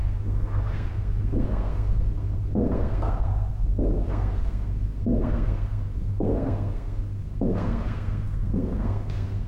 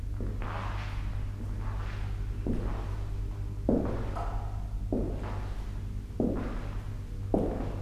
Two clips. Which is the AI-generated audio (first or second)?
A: first